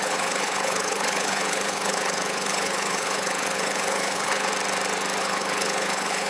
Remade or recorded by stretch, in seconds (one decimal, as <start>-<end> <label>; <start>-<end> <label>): 0.0-4.5 remade; 4.5-5.2 recorded; 5.2-6.3 remade